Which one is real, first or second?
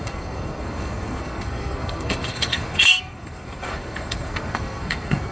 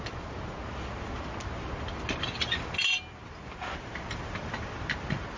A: second